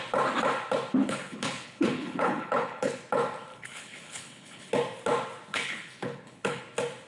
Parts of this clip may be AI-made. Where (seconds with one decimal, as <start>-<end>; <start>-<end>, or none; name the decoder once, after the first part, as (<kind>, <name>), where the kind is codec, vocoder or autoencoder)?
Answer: 1.0-3.0 (codec, HILCodec); 3.5-4.7; 5.5-6.6